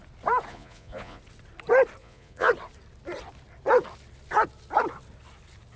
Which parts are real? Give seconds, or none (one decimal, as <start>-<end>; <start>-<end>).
0.0-0.5; 1.2-2.0; 2.5-5.8

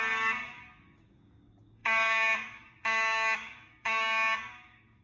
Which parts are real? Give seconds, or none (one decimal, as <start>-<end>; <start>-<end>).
none

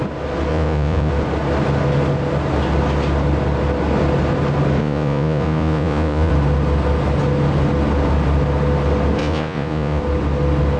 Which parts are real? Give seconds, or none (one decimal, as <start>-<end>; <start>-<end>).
0.0-0.5; 1.1-4.8; 6.3-9.2; 10.0-10.8

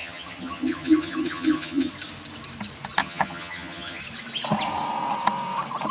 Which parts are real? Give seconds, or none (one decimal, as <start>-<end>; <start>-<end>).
1.9-3.0; 4.0-5.9

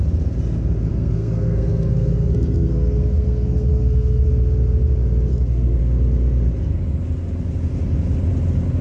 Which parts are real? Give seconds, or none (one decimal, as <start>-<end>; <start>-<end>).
0.0-0.9; 4.3-5.3; 5.8-8.8

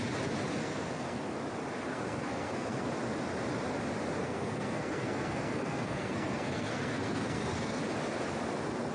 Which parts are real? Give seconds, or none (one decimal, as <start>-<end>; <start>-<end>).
0.0-0.6; 1.2-1.9; 2.9-4.2; 7.8-8.9

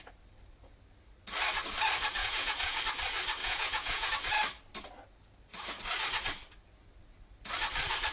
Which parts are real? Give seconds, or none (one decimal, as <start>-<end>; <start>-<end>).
0.0-2.2; 2.8-3.4; 4.1-8.1

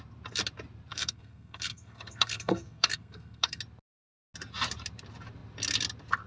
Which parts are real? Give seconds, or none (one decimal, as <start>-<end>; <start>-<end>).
0.0-0.9; 3.6-6.3